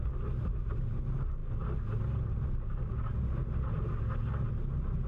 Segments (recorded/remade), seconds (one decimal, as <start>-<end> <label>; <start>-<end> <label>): 0.0-5.1 recorded